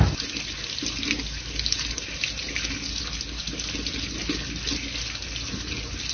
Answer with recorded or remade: recorded